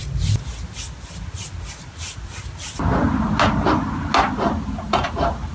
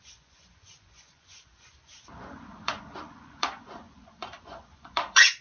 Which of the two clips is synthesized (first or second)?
second